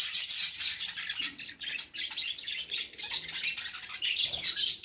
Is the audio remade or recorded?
recorded